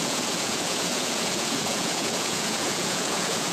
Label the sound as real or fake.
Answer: fake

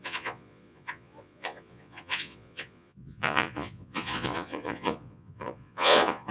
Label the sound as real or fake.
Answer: fake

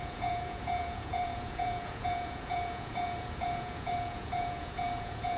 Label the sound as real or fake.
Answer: fake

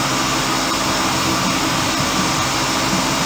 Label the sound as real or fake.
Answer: real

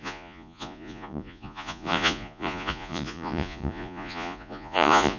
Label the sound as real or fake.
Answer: fake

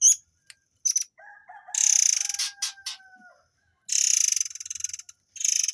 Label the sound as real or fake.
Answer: real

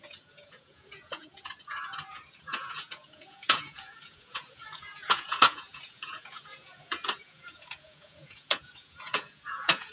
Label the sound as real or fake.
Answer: fake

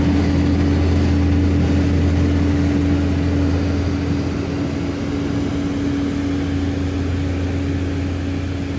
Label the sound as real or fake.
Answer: real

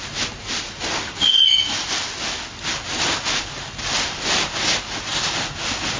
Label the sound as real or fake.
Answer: real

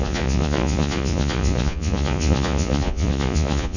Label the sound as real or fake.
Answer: fake